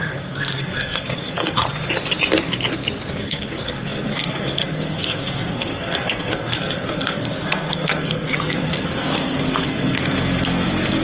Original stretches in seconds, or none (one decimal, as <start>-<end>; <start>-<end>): 1.6-3.1